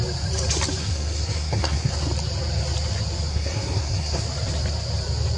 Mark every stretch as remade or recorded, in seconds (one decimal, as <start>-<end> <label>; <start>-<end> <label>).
0.0-0.8 recorded; 0.8-1.9 remade; 1.9-3.3 recorded; 3.3-4.2 remade; 4.2-5.4 recorded